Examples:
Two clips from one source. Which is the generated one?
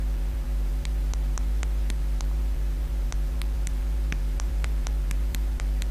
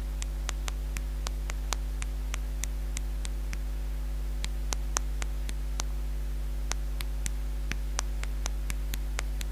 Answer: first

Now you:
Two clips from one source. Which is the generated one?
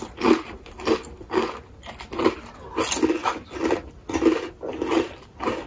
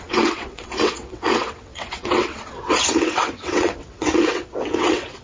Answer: second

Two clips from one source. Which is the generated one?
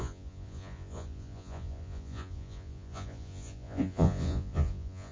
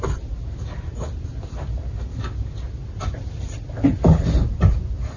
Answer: first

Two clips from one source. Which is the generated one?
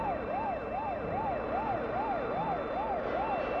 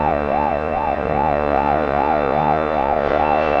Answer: second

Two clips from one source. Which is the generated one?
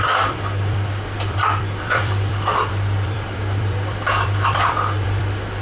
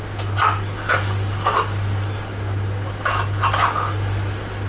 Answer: first